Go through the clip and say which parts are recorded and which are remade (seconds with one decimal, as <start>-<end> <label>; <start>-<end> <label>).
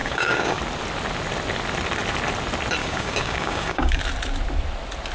0.0-0.6 remade; 0.6-2.8 recorded; 2.8-4.0 remade; 4.0-5.1 recorded